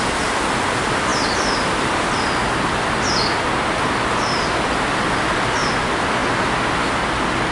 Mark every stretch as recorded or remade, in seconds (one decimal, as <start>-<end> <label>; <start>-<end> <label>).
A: 0.0-7.5 recorded